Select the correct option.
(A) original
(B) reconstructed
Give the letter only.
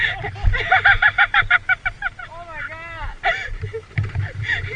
A